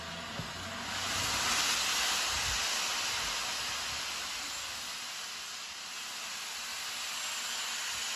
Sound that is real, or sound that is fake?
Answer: real